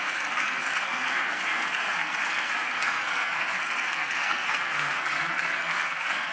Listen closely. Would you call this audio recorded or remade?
remade